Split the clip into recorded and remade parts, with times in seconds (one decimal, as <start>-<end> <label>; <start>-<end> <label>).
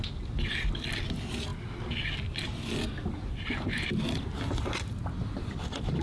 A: 0.0-6.0 recorded